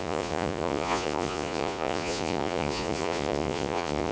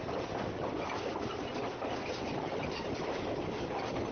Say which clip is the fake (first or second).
first